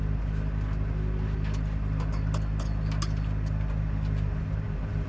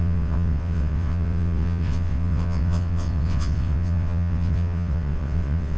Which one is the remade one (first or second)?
second